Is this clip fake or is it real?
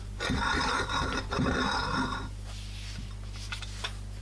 real